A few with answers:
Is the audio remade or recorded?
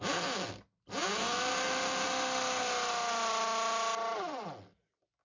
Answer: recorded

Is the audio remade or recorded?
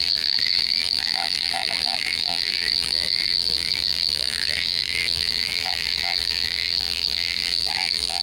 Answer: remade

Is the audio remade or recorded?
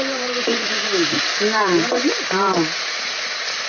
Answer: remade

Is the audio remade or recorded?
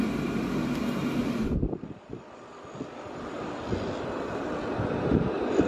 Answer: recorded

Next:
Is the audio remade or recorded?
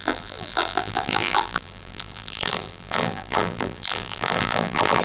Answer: remade